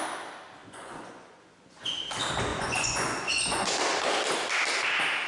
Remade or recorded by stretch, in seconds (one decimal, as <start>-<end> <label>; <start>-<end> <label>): 0.0-0.6 recorded; 0.6-2.0 remade; 2.0-2.5 recorded; 2.5-3.7 remade; 3.7-5.3 recorded